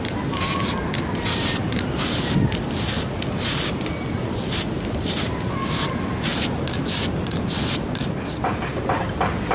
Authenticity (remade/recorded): recorded